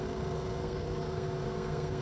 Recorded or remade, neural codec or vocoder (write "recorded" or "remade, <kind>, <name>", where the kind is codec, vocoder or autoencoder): remade, codec, SNAC